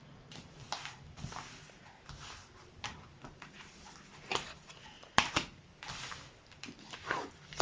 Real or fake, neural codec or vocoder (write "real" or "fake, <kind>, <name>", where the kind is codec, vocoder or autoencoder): fake, vocoder, BigVGAN v2